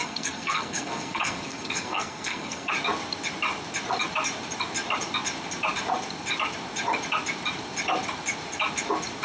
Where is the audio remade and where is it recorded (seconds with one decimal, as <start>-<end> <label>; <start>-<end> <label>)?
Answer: 0.0-2.7 remade; 2.7-9.2 recorded